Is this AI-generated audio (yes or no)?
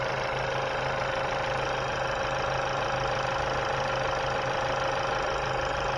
no